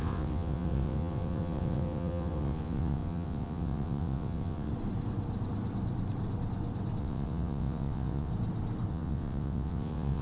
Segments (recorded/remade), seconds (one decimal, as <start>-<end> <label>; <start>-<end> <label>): 0.0-4.7 remade; 4.7-7.0 recorded; 7.0-8.3 remade; 8.3-8.9 recorded; 8.9-10.2 remade